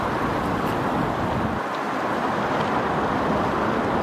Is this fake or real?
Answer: real